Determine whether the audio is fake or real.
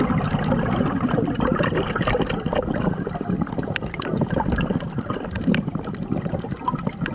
fake